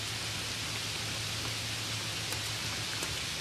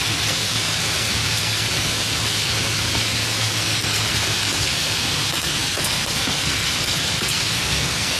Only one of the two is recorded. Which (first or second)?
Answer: first